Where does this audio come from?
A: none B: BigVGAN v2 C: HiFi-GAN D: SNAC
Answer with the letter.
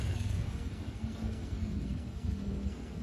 D